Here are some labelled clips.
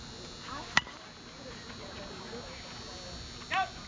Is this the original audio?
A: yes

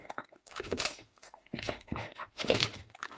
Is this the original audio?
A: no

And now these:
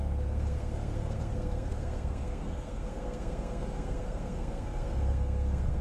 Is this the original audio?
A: no